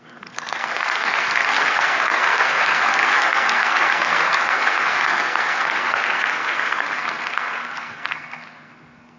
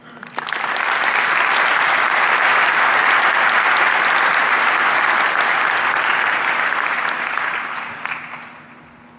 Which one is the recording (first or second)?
second